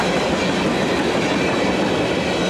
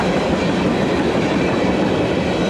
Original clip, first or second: first